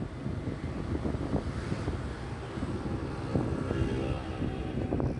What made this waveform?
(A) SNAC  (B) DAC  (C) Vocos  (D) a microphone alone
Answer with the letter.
D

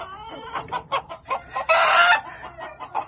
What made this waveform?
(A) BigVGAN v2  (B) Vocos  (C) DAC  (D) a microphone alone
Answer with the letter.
D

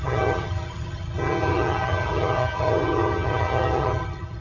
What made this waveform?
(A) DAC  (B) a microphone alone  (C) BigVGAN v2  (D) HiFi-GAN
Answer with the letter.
D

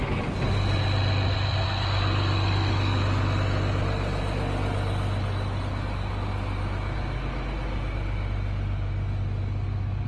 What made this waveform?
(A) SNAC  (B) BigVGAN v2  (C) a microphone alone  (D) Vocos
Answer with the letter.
C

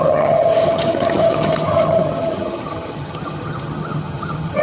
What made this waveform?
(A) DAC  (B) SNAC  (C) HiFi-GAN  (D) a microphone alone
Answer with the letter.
C